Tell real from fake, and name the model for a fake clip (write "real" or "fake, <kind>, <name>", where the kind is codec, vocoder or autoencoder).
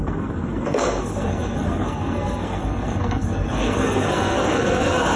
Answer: fake, codec, SNAC